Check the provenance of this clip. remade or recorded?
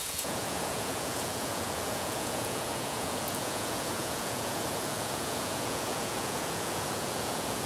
remade